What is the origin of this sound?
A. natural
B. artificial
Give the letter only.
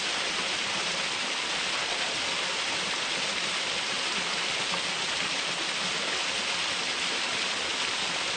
A